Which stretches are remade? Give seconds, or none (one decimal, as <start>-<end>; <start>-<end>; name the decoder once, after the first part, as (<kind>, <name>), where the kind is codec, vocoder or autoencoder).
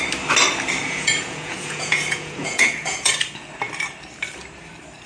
0.8-3.1 (vocoder, Vocos)